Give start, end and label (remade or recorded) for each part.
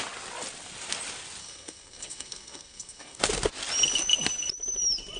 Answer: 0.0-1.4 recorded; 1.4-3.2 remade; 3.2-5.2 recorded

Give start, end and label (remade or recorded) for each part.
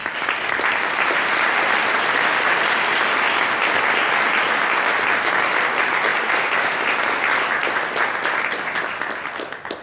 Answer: 0.0-6.1 recorded; 6.1-7.0 remade; 7.0-9.8 recorded